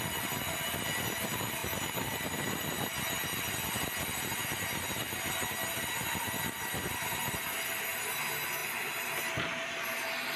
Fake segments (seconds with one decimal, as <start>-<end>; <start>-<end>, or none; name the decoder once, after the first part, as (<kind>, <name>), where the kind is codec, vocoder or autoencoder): none